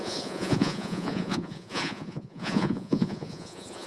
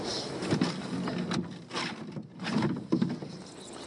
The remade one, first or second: first